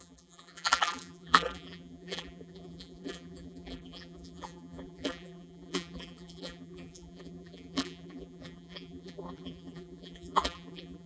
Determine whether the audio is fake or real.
fake